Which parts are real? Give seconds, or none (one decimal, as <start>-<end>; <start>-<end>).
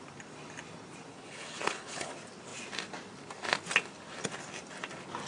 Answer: 0.0-1.1; 2.1-5.3